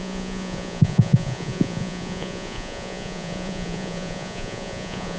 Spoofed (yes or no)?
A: yes